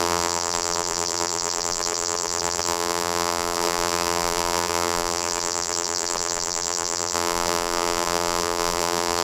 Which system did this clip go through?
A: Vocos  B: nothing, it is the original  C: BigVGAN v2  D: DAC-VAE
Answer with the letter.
C